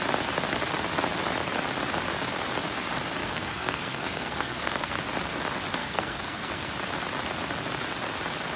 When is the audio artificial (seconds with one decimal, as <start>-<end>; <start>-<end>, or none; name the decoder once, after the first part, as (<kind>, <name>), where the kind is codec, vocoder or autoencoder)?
3.2-5.0 (codec, SNAC); 5.8-6.7